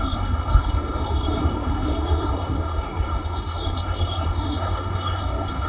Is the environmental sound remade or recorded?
remade